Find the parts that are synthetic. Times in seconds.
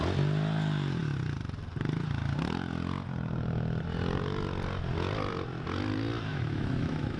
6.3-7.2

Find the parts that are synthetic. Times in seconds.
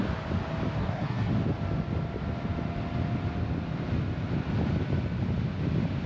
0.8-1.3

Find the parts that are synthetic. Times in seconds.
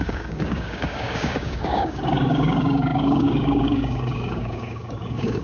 0.0-5.4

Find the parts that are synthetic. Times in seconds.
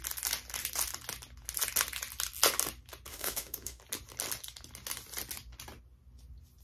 3.1-3.8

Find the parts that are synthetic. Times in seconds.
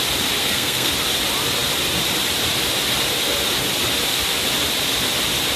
0.4-0.9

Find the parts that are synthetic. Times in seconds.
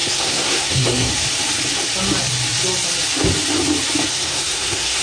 0.0-1.1; 4.1-5.0